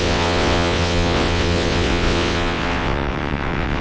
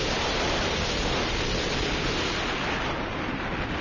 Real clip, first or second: second